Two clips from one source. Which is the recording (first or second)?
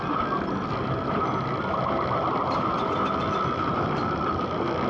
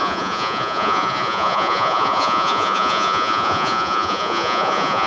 first